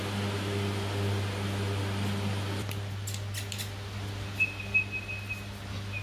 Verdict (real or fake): real